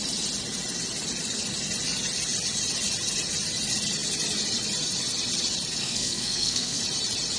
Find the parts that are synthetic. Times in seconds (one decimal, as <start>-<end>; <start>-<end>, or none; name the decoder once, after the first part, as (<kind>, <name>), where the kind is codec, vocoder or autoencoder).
5.8-6.8 (codec, SNAC)